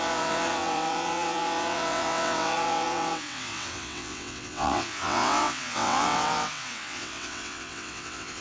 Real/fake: fake